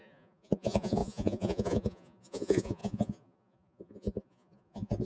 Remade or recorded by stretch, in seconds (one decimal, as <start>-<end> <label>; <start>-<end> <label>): 0.0-5.0 remade

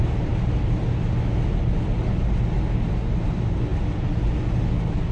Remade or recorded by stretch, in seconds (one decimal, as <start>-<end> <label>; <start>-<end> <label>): 0.0-5.1 recorded

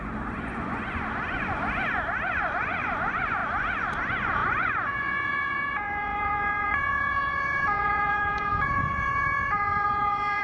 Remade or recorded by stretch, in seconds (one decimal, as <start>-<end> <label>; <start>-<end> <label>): 0.0-10.4 remade

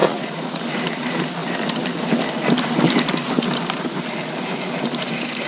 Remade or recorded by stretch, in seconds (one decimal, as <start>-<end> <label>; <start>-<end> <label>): 0.0-0.6 remade; 0.6-5.5 recorded

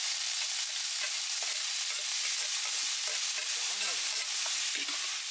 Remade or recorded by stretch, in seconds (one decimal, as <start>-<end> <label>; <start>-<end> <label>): 0.0-5.3 recorded